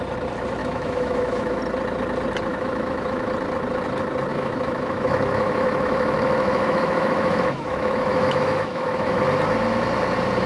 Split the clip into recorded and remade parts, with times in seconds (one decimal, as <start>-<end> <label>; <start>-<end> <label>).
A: 0.0-0.6 recorded; 0.6-1.6 remade; 1.6-2.5 recorded; 2.5-3.3 remade; 3.3-4.3 recorded; 4.3-9.2 remade; 9.2-10.5 recorded